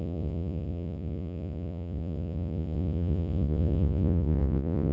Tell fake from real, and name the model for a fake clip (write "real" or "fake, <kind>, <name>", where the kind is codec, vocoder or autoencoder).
fake, vocoder, Vocos